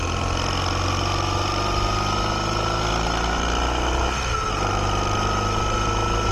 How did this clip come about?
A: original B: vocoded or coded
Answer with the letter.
A